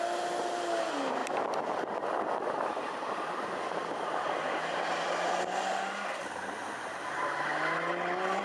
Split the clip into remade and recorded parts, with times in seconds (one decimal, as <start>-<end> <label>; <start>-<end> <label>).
0.0-8.4 recorded